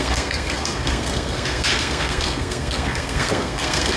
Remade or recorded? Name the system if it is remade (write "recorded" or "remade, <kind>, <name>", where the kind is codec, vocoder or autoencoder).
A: remade, codec, SNAC